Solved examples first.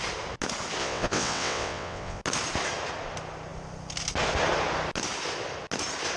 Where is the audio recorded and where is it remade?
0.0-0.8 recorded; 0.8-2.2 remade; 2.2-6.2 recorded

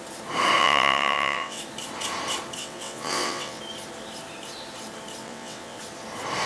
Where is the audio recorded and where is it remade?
0.0-0.6 recorded; 0.6-1.6 remade; 1.6-2.6 recorded; 2.6-3.6 remade; 3.6-5.2 recorded; 5.2-5.8 remade; 5.8-6.5 recorded

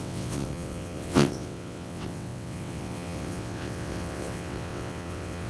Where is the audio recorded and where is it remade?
0.0-5.5 remade

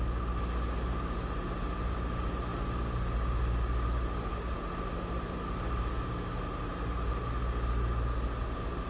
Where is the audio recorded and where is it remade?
0.0-8.9 recorded

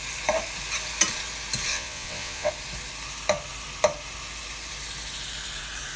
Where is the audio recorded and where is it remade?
0.0-1.7 recorded; 1.7-2.5 remade; 2.5-6.0 recorded

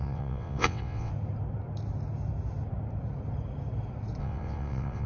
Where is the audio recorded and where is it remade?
0.0-1.1 remade; 1.1-4.2 recorded; 4.2-5.1 remade

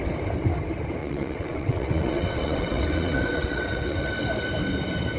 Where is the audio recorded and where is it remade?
0.0-1.0 recorded; 1.0-4.1 remade; 4.1-5.2 recorded